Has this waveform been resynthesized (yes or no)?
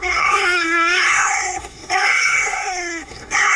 yes